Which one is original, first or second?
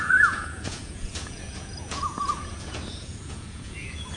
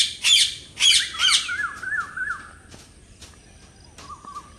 second